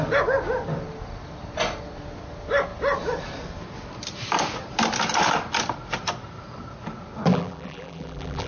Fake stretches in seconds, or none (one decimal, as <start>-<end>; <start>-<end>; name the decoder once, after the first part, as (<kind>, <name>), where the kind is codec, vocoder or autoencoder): 7.3-8.5 (vocoder, BigVGAN v2)